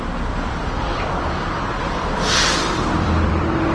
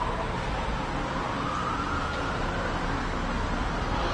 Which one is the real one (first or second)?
second